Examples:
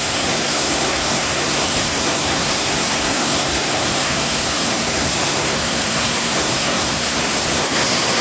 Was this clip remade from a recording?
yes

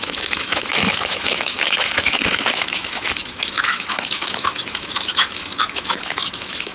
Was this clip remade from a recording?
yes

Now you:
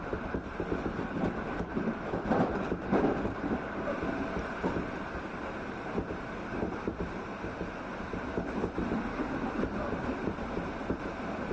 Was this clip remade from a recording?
no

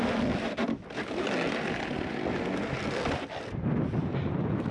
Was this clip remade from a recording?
no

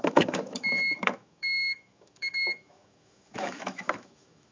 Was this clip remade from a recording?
yes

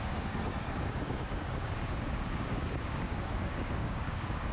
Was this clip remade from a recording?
yes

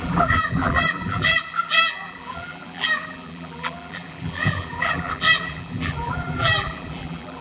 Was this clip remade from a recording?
yes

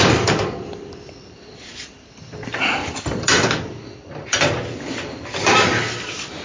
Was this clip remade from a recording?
yes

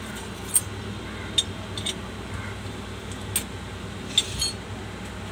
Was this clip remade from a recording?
no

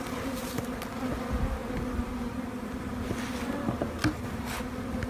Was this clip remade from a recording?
no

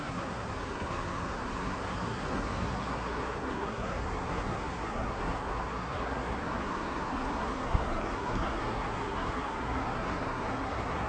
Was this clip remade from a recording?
yes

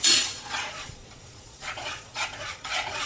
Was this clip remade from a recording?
yes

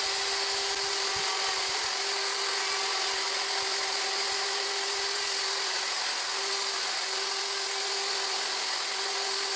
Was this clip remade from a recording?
no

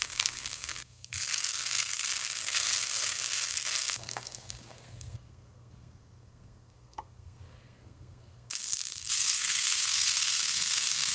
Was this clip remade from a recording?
yes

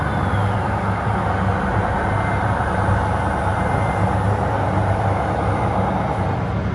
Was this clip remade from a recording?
no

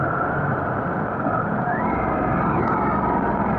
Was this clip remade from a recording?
no